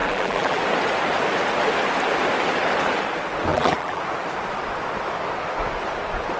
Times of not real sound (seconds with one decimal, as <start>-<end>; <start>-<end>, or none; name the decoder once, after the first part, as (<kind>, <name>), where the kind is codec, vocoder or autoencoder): 0.0-0.6 (vocoder, BigVGAN v2); 3.5-4.0